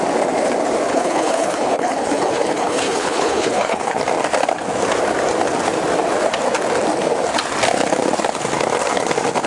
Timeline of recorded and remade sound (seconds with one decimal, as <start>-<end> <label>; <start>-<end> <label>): 0.0-0.9 recorded; 0.9-4.0 remade; 4.0-9.5 recorded